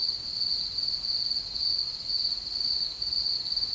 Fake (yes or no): yes